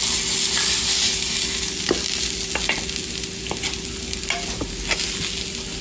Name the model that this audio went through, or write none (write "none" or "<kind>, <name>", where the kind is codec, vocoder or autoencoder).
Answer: none